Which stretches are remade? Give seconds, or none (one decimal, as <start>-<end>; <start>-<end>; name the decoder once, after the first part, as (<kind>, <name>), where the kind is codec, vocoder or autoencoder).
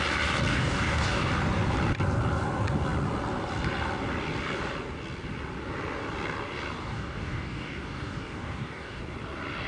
0.5-1.3 (codec, DAC); 6.8-9.0